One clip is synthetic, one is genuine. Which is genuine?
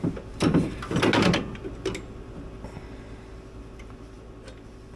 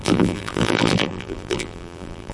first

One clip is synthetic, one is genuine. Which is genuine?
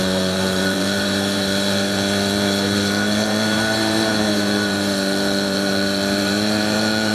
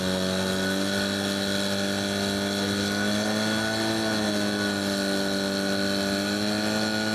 second